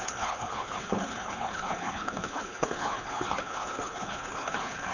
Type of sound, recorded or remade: remade